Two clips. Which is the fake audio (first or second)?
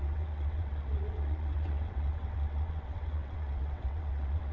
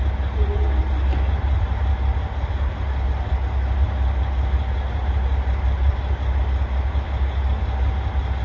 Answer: first